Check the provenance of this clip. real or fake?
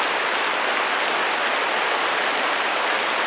real